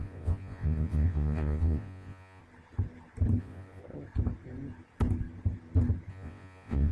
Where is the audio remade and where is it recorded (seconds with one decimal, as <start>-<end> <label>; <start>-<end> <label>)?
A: 0.0-2.4 remade; 2.4-3.4 recorded; 3.4-3.8 remade; 3.8-6.1 recorded; 6.1-6.9 remade